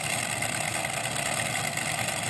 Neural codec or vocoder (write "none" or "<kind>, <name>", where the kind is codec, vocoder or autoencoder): none